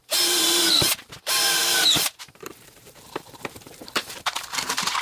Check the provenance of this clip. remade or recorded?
remade